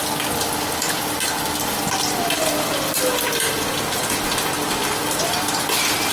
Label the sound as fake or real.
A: real